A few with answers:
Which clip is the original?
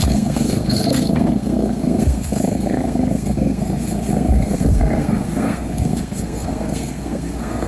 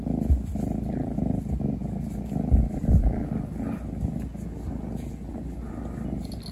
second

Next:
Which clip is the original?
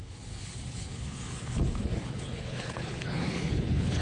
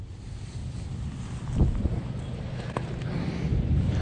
second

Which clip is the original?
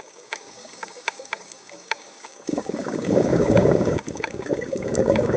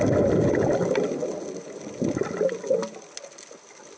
second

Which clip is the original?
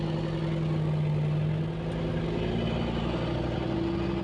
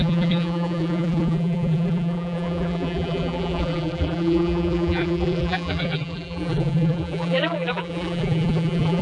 first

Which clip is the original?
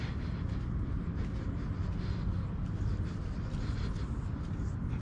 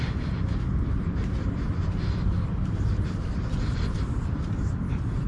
first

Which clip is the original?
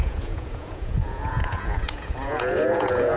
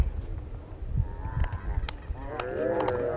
second